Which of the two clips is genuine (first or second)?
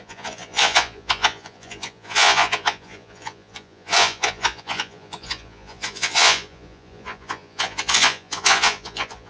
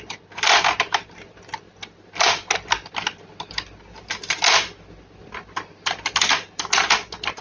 second